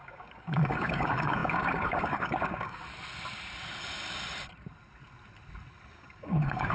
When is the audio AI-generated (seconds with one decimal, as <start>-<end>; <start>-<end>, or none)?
0.0-2.8; 5.9-6.7